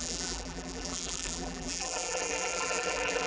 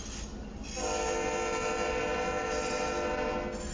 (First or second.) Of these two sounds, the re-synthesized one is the first